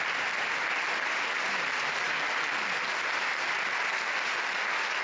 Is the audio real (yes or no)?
yes